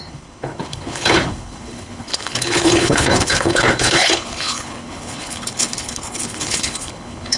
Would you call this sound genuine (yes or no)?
no